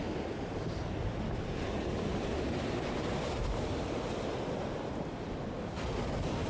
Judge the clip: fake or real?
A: real